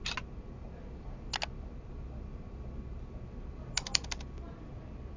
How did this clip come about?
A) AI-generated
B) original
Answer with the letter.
B